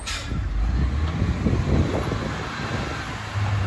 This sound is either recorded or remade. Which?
recorded